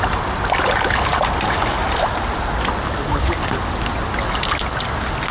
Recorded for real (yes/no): yes